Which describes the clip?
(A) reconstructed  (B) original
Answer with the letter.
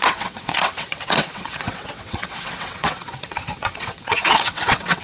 A